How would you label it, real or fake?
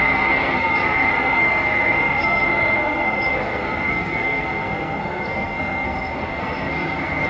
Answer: fake